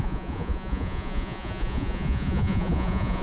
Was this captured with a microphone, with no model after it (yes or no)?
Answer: no